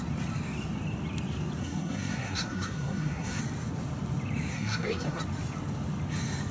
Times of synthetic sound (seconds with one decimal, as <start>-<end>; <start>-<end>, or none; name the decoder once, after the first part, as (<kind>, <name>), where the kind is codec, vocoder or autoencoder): 1.6-3.4 (codec, SNAC); 4.5-5.2